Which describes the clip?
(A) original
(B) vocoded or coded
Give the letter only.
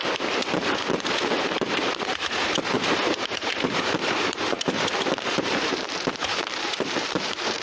B